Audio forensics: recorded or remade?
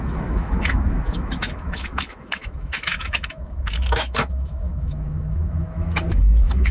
remade